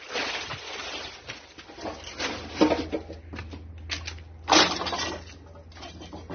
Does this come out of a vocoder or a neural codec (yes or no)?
no